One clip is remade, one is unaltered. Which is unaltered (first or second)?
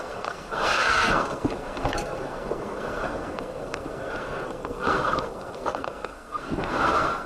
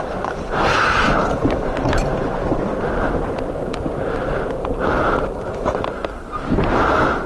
second